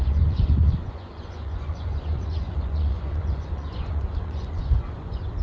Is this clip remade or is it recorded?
remade